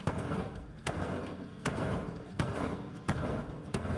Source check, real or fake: fake